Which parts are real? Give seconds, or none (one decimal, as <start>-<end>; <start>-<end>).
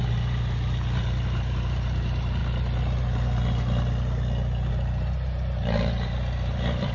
2.4-4.7